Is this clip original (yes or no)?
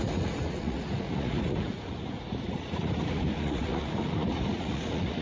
no